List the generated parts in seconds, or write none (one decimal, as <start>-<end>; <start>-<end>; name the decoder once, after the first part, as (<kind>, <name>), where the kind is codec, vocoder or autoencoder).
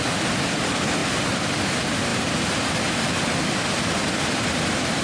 0.0-5.0 (vocoder, BigVGAN v2)